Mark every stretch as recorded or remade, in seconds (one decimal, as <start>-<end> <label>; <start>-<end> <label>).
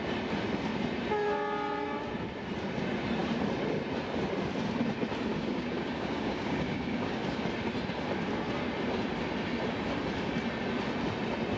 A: 0.0-5.3 recorded; 5.3-7.4 remade; 7.4-11.6 recorded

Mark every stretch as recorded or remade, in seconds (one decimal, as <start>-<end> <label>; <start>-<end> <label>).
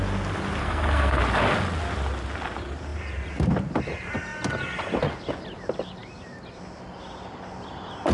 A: 0.0-0.6 recorded; 0.6-1.2 remade; 1.2-8.1 recorded